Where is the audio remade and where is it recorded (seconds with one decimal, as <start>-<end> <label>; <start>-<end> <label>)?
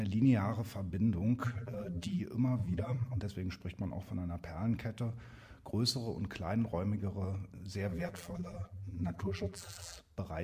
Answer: 0.0-1.4 recorded; 1.4-2.2 remade; 2.2-2.6 recorded; 2.6-3.2 remade; 3.2-7.9 recorded; 7.9-10.0 remade; 10.0-10.4 recorded